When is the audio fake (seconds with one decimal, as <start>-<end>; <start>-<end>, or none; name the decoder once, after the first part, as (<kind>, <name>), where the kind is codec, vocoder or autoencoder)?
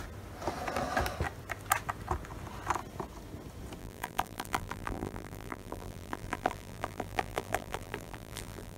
3.8-8.8 (vocoder, BigVGAN v2)